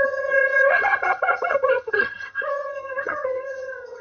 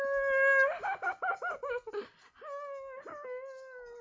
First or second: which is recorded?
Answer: second